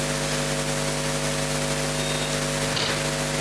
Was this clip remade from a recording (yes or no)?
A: no